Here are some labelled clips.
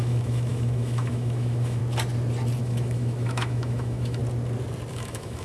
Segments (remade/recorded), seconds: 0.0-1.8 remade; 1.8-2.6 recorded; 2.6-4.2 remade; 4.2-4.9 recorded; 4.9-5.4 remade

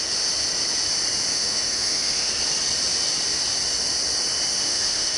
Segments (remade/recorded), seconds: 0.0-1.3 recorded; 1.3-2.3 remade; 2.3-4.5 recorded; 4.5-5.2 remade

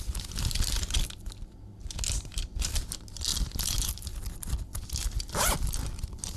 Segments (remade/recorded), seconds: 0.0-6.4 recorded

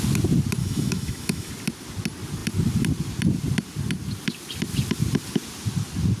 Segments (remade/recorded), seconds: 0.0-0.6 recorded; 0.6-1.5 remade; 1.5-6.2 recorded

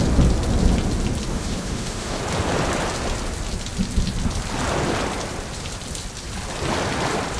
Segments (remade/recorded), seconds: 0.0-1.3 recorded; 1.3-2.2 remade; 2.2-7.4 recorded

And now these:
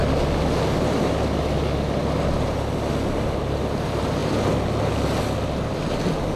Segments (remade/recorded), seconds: 0.0-6.4 recorded

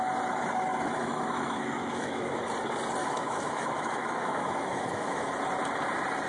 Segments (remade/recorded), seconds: 0.0-0.7 recorded; 0.7-2.4 remade; 2.4-3.0 recorded; 3.0-5.3 remade; 5.3-6.3 recorded